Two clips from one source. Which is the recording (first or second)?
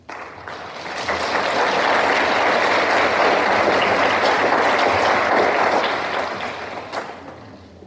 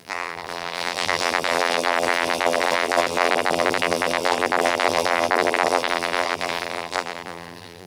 first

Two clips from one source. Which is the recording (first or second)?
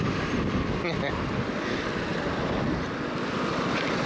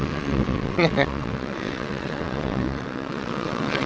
first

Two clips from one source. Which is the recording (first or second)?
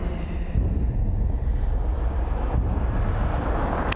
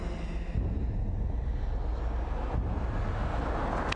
second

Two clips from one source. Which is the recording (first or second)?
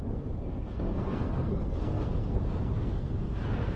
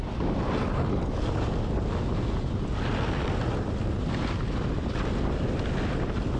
second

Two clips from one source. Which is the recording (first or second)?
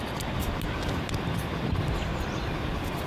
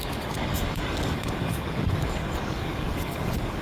first